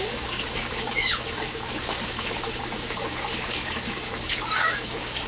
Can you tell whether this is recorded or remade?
remade